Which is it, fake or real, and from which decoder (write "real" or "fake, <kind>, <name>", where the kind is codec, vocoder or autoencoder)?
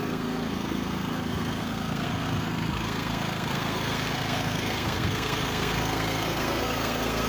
fake, codec, SNAC